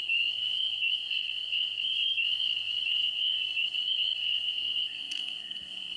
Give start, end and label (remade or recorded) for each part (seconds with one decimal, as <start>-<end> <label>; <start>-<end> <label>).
0.0-6.0 remade